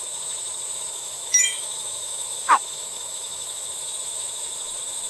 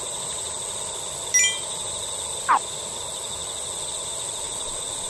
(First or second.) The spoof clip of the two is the first